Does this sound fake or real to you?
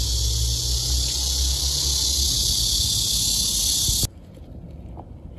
real